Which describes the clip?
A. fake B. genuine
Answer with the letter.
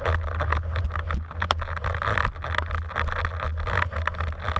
B